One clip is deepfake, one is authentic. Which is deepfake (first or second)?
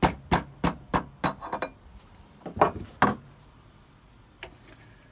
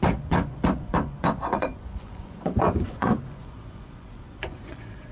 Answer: second